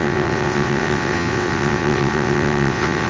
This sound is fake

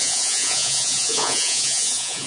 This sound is fake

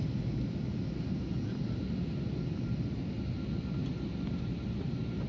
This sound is real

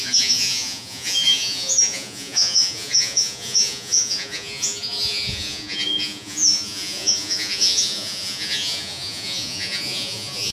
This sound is fake